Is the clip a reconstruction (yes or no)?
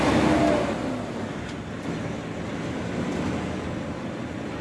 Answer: no